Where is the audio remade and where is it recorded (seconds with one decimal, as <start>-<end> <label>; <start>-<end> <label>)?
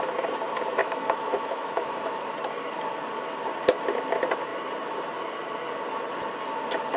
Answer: 0.0-0.8 recorded; 0.8-2.2 remade; 2.2-7.0 recorded